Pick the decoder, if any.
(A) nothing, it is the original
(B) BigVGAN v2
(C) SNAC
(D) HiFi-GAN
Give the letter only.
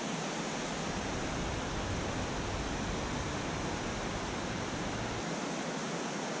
A